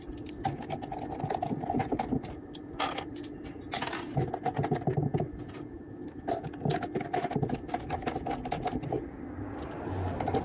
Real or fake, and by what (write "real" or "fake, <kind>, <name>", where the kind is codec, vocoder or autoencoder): real